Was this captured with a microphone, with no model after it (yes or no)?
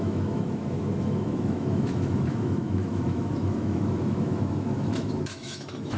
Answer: no